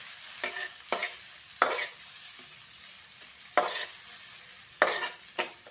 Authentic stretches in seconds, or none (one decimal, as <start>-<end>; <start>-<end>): 0.0-5.7